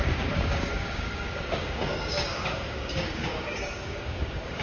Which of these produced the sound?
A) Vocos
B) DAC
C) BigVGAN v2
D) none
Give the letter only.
B